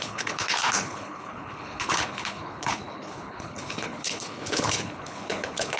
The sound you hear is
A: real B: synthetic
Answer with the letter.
B